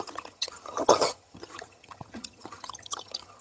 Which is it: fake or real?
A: fake